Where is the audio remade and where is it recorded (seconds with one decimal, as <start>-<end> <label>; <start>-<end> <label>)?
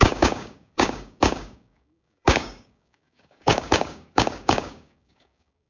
0.0-5.7 remade